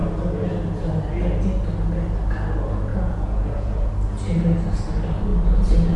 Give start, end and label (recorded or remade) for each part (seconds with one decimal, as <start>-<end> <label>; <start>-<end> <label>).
0.0-2.9 recorded; 2.9-3.9 remade; 3.9-6.0 recorded